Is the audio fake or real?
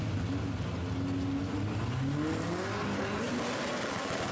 real